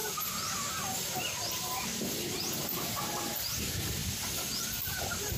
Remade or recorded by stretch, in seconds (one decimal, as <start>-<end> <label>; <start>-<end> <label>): 0.0-2.4 recorded; 2.4-4.0 remade; 4.0-5.0 recorded; 5.0-5.4 remade